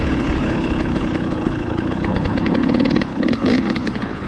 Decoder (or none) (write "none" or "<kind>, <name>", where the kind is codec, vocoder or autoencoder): codec, HILCodec